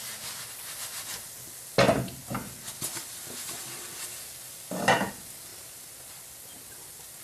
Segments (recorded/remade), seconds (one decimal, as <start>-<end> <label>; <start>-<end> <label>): 0.0-7.2 recorded